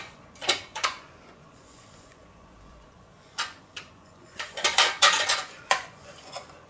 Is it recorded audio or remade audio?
remade